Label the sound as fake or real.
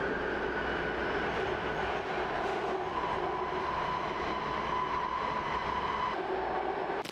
real